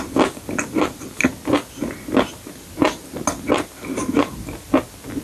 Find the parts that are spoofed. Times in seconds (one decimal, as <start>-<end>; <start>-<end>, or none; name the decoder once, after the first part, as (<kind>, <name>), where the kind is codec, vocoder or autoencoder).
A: none